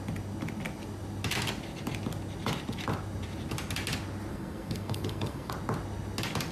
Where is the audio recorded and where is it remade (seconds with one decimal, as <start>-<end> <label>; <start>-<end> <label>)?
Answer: 0.0-4.3 recorded; 4.3-5.5 remade; 5.5-6.5 recorded